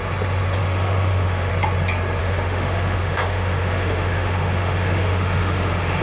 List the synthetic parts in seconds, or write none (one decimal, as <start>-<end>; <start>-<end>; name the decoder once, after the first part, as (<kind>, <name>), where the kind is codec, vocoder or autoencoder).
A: 0.6-1.5 (autoencoder, DAC-VAE); 2.2-6.0